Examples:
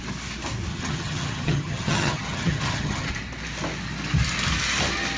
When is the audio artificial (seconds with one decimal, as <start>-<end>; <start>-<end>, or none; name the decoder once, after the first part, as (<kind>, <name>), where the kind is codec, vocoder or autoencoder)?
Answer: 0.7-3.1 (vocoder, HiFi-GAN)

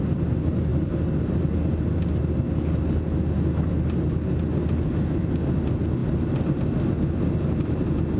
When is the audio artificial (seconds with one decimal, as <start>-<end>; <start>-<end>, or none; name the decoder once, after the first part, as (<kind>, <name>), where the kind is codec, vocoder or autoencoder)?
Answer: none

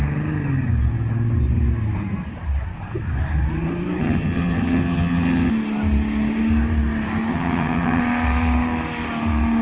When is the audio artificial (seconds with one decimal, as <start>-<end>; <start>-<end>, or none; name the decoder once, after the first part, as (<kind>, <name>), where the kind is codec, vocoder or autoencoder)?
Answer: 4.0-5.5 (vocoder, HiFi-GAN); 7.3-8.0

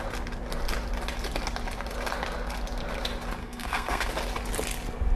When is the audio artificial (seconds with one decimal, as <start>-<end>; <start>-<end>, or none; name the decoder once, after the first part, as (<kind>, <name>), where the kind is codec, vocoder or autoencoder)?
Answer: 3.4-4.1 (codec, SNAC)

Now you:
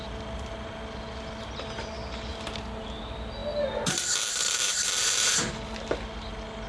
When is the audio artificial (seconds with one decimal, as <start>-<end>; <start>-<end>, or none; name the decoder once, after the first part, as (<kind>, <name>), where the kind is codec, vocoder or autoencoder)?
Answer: 2.3-2.8 (vocoder, BigVGAN v2); 4.4-5.4